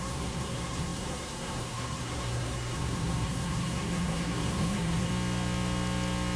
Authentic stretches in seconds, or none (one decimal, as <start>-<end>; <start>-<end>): 5.1-6.4